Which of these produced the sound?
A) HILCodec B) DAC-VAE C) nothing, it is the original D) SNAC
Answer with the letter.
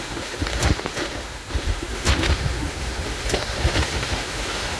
B